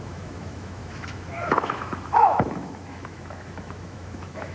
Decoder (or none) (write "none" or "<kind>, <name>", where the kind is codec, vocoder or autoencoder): autoencoder, DAC-VAE